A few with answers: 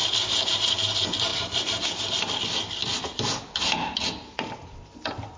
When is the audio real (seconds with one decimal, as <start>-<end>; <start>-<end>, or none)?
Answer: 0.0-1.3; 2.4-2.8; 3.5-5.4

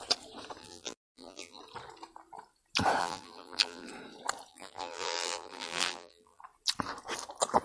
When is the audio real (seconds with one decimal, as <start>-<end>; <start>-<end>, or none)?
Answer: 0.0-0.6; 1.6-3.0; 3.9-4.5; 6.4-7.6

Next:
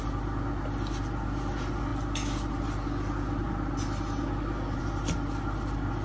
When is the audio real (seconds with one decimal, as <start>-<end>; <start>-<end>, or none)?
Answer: 0.0-6.0